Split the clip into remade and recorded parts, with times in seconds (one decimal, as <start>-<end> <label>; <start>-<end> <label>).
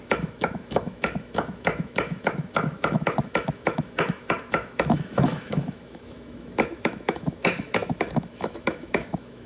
0.0-9.5 remade